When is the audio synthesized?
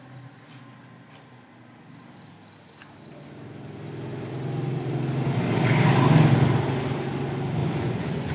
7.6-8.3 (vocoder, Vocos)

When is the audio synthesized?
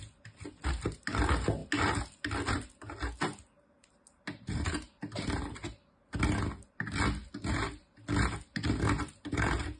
none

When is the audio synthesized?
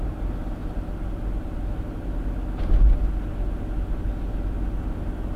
none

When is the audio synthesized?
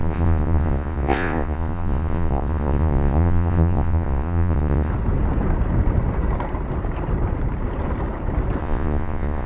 0.0-4.9 (vocoder, Vocos); 8.6-9.5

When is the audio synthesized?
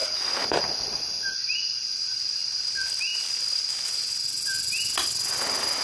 none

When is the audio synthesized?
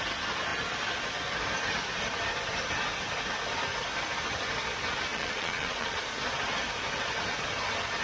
5.1-6.0 (vocoder, Vocos)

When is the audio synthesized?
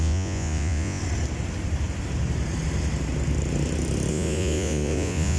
0.0-1.0 (vocoder, Vocos); 4.1-5.4